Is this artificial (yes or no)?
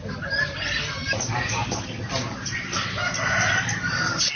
no